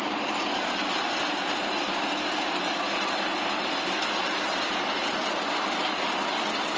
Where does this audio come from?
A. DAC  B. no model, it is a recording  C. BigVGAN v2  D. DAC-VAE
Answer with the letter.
B